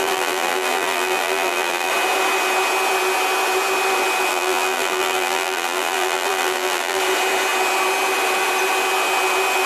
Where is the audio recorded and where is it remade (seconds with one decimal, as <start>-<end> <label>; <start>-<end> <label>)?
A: 0.0-1.9 remade; 1.9-4.3 recorded; 4.3-7.0 remade; 7.0-9.7 recorded